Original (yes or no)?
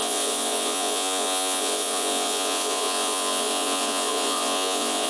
no